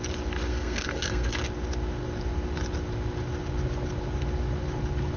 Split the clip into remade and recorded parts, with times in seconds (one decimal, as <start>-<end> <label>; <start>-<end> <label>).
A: 0.0-0.5 recorded; 0.5-1.3 remade; 1.3-5.2 recorded